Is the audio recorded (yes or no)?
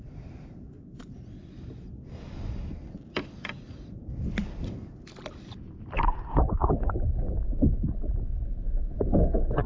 yes